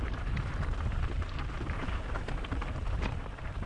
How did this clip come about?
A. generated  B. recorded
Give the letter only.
A